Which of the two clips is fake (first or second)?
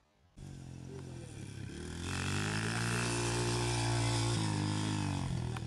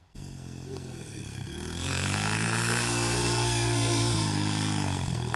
second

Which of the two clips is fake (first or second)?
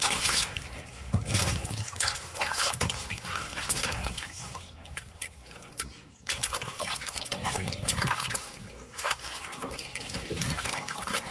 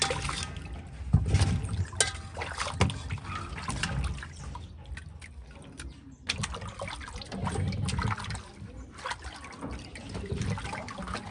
first